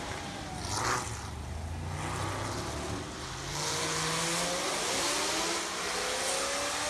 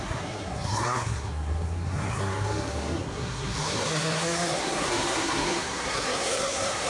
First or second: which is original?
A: first